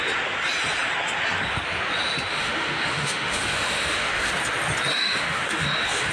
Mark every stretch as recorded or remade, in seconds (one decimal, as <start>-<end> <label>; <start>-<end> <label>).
0.0-2.3 recorded; 2.3-4.3 remade; 4.3-4.9 recorded; 4.9-6.1 remade